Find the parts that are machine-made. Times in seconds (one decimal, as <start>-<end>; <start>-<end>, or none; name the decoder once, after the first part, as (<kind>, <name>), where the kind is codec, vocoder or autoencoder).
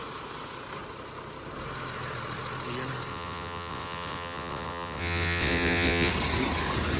3.1-6.1 (vocoder, WaveNeXt)